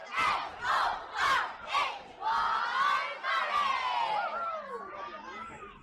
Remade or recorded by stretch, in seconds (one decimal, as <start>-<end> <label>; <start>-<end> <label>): 0.0-5.8 recorded

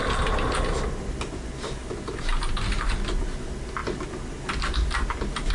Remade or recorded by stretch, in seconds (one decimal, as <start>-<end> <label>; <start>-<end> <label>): 0.0-1.8 recorded; 1.8-2.9 remade; 2.9-5.5 recorded

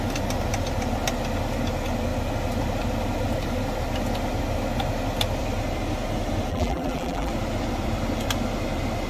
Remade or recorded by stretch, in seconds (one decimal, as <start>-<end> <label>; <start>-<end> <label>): 0.0-6.5 recorded; 6.5-7.3 remade; 7.3-9.1 recorded

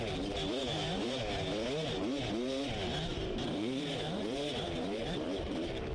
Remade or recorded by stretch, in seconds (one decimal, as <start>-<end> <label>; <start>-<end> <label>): 0.0-0.6 recorded; 0.6-1.2 remade; 1.2-2.0 recorded; 2.0-2.7 remade; 2.7-3.1 recorded; 3.1-5.5 remade; 5.5-5.9 recorded